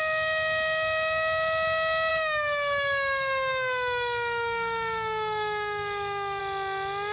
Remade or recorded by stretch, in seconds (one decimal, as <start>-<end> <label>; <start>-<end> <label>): 0.0-2.1 recorded; 2.1-6.4 remade; 6.4-7.1 recorded